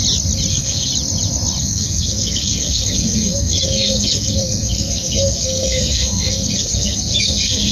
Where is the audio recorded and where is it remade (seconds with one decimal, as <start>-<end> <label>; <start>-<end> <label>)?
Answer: 0.0-0.5 recorded; 0.5-0.9 remade; 0.9-1.6 recorded; 1.6-7.7 remade